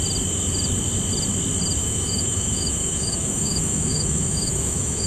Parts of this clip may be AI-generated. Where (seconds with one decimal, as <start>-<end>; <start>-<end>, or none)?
1.8-5.1